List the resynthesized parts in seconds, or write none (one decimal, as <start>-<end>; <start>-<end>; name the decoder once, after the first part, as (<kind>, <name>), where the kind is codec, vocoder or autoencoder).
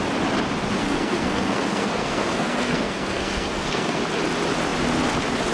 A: 0.8-4.0 (codec, SNAC)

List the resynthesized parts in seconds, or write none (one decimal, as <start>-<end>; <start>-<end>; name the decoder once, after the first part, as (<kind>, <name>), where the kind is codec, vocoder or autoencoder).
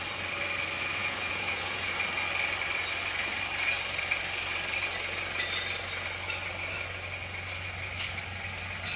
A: 1.0-1.9 (vocoder, Vocos)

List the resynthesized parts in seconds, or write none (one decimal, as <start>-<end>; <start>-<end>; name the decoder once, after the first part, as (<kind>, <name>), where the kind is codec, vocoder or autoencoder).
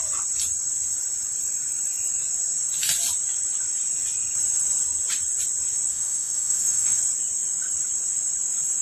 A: 5.9-7.0 (autoencoder, DAC-VAE)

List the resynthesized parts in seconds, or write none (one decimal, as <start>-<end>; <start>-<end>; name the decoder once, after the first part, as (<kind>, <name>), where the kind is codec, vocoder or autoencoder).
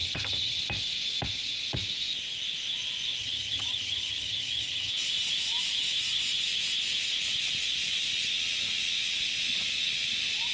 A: 0.0-0.6 (vocoder, HiFi-GAN); 3.2-4.9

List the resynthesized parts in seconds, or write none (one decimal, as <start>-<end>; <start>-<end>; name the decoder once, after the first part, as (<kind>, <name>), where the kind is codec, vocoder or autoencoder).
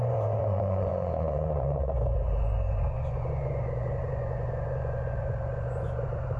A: 0.0-6.4 (vocoder, Vocos)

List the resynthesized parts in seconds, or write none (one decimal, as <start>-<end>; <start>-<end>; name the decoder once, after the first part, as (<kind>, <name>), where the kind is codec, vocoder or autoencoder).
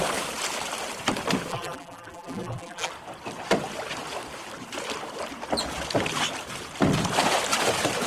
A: 1.5-2.9 (vocoder, BigVGAN v2)